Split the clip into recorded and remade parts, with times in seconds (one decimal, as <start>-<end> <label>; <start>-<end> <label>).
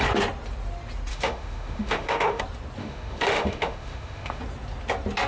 0.0-1.1 recorded; 1.1-2.4 remade; 2.4-2.8 recorded; 2.8-4.4 remade; 4.4-5.3 recorded